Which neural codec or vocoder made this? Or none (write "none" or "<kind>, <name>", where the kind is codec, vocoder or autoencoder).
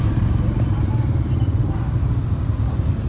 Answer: none